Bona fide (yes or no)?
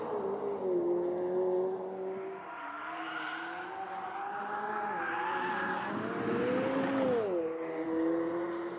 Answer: yes